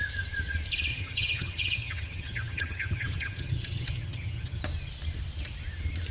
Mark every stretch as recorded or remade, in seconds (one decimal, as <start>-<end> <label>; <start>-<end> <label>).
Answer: 0.0-0.9 recorded; 0.9-4.6 remade; 4.6-6.1 recorded

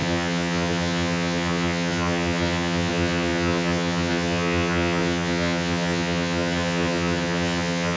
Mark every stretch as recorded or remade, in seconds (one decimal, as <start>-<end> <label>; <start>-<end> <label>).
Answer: 0.0-8.0 remade

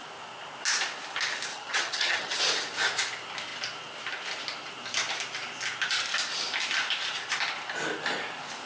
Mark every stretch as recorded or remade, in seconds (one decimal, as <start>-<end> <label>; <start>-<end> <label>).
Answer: 0.0-1.5 recorded; 1.5-2.4 remade; 2.4-8.7 recorded

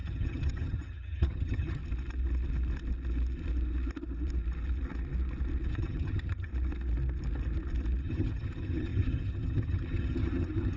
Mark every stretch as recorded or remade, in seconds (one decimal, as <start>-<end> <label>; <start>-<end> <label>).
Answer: 0.0-1.8 remade; 1.8-5.7 recorded; 5.7-6.5 remade; 6.5-8.0 recorded; 8.0-10.8 remade

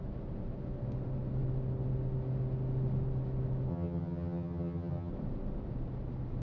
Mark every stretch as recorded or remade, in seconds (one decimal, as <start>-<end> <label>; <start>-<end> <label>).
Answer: 0.0-3.7 recorded; 3.7-5.1 remade; 5.1-6.4 recorded

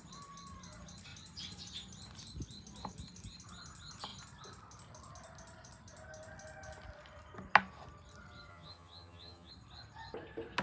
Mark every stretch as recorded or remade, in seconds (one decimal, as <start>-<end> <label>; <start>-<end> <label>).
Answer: 0.0-8.5 recorded; 8.5-9.5 remade; 9.5-10.6 recorded

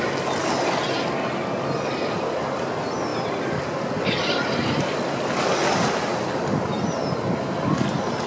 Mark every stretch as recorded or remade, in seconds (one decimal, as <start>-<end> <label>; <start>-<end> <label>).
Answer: 0.0-8.3 recorded

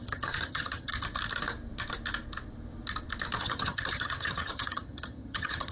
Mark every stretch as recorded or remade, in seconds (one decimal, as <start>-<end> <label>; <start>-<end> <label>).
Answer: 0.0-0.9 remade; 0.9-3.4 recorded; 3.4-5.7 remade